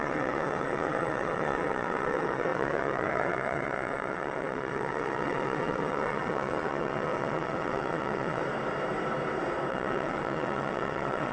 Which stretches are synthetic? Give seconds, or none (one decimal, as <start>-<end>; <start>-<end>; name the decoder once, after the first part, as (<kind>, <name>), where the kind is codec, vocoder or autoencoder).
0.0-8.4 (vocoder, WaveNeXt); 9.7-11.3